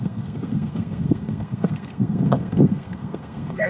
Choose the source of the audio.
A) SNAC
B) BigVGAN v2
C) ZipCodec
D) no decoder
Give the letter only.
A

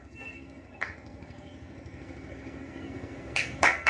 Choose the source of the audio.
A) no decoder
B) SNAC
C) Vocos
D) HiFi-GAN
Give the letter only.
B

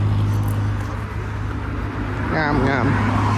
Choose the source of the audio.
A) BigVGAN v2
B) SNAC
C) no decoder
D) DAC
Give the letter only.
C